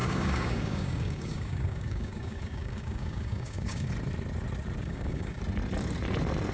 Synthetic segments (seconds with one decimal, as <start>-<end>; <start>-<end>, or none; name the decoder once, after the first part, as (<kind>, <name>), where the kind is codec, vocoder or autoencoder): 0.0-3.9 (codec, DAC); 4.8-5.4

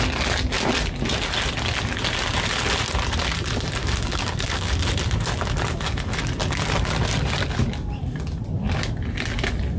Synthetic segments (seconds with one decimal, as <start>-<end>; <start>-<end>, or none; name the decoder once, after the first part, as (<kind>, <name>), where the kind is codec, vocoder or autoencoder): 3.8-4.8 (codec, DAC)

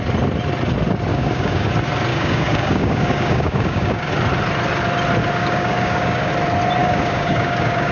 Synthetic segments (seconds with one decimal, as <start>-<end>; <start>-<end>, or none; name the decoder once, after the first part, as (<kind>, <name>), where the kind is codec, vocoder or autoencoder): 1.1-1.7 (codec, DAC); 2.1-4.1; 5.4-6.3; 6.8-7.9

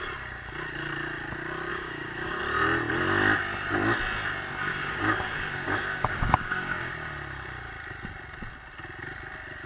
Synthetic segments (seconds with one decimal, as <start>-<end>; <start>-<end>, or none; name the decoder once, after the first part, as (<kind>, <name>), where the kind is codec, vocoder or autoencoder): 1.7-2.4 (codec, DAC); 4.7-6.9

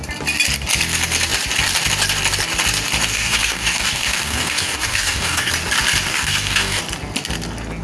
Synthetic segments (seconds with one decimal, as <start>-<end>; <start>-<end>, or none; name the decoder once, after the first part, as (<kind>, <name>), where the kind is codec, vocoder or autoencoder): 3.1-5.5 (codec, DAC); 6.1-6.8

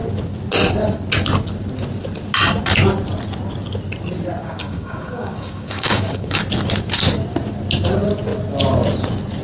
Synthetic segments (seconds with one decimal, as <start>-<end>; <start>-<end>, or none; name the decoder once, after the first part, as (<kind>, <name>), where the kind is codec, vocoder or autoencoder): 4.4-6.4 (codec, DAC)